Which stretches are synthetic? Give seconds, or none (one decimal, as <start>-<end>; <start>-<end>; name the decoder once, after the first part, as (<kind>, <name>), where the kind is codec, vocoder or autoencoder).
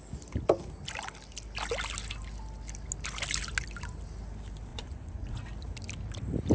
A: 4.7-5.4 (vocoder, Vocos)